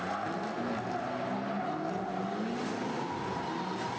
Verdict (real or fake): real